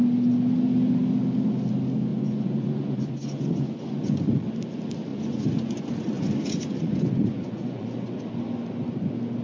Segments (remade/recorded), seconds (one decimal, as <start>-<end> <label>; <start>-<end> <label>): 0.0-2.1 recorded; 2.1-4.2 remade; 4.2-5.1 recorded; 5.1-8.2 remade; 8.2-9.4 recorded